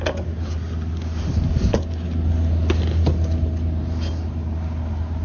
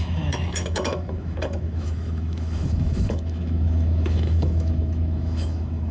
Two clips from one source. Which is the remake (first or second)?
second